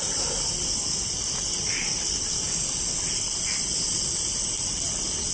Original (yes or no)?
yes